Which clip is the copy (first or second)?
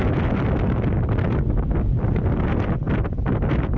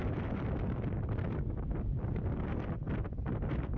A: second